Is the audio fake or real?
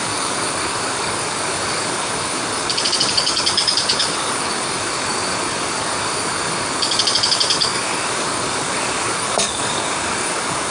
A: fake